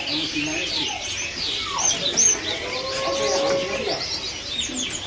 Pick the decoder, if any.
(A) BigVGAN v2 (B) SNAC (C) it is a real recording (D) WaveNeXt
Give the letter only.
C